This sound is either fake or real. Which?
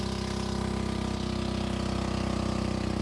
real